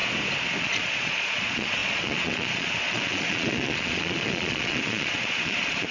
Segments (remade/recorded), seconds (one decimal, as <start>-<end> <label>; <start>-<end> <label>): 0.0-0.6 recorded; 0.6-5.9 remade

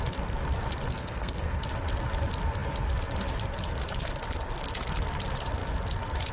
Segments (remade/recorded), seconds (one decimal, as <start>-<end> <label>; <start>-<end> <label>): 0.0-1.0 recorded; 1.0-1.6 remade; 1.6-6.3 recorded

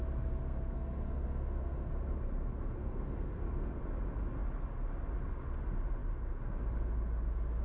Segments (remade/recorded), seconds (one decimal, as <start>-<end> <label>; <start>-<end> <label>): 0.0-0.4 recorded; 0.4-1.9 remade; 1.9-2.8 recorded; 2.8-3.8 remade; 3.8-7.6 recorded

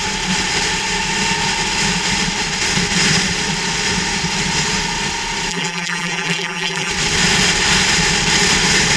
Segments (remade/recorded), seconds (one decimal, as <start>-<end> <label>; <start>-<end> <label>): 0.0-5.5 recorded; 5.5-6.9 remade; 6.9-9.0 recorded

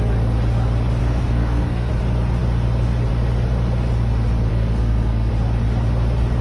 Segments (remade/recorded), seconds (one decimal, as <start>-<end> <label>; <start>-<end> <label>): 0.0-1.0 recorded; 1.0-1.9 remade; 1.9-4.5 recorded; 4.5-5.3 remade; 5.3-6.4 recorded

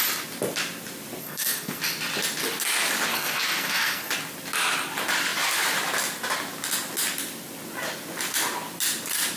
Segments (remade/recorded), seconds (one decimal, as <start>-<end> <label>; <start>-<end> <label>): 0.0-1.2 recorded; 1.2-1.8 remade; 1.8-3.1 recorded; 3.1-4.1 remade; 4.1-9.4 recorded

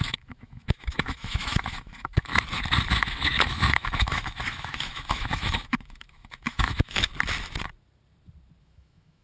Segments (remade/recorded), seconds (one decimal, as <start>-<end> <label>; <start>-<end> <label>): 0.0-2.3 remade; 2.3-2.9 recorded; 2.9-7.1 remade; 7.1-8.6 recorded; 8.6-9.2 remade

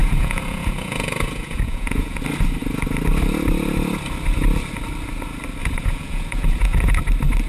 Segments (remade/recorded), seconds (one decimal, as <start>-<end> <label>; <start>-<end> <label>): 0.0-2.2 remade; 2.2-5.6 recorded; 5.6-7.0 remade; 7.0-7.5 recorded